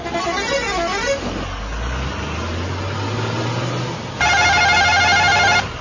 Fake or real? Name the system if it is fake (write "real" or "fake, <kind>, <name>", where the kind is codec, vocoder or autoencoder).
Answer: real